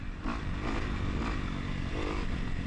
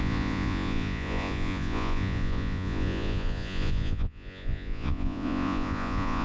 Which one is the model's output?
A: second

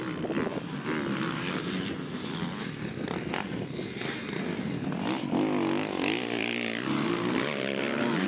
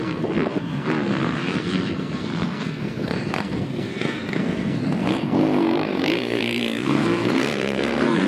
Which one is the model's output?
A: second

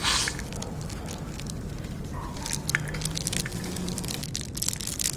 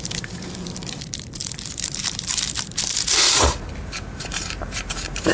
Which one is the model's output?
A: second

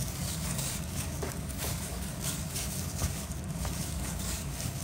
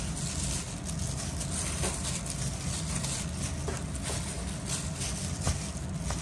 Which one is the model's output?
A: first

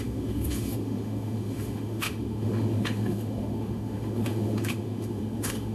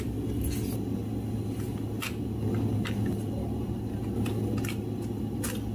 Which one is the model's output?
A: first